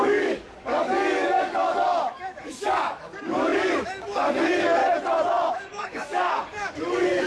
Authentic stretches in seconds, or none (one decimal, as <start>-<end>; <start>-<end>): 4.8-5.5